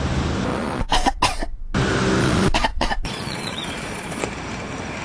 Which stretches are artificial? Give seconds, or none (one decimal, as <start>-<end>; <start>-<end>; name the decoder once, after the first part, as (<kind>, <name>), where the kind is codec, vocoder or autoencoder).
0.5-1.1 (vocoder, Vocos); 2.2-4.2